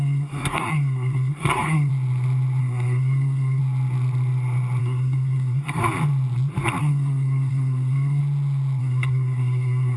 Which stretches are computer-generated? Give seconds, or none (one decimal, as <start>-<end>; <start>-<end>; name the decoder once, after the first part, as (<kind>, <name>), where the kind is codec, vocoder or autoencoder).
0.0-1.9 (codec, SNAC); 2.6-3.6; 4.8-5.8; 6.8-8.2; 8.8-10.0